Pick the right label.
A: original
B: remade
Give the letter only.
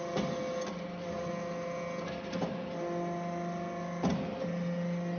A